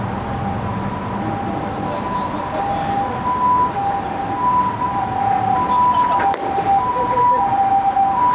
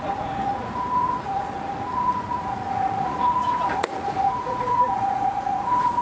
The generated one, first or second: second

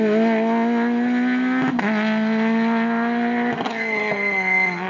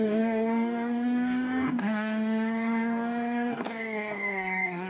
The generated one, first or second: second